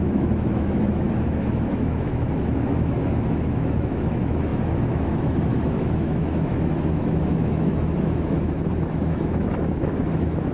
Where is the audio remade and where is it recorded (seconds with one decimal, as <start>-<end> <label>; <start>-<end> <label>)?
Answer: 0.0-10.5 remade